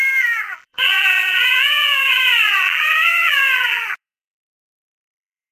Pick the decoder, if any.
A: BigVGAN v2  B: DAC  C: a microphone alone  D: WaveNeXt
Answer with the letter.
A